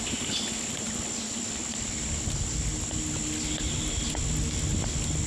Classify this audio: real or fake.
real